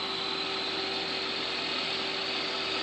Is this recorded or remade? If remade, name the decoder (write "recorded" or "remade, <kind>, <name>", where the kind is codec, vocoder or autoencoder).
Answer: recorded